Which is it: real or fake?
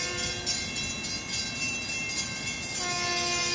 real